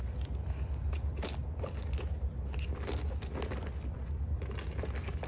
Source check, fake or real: real